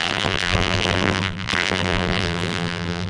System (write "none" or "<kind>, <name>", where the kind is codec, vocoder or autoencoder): vocoder, BigVGAN v2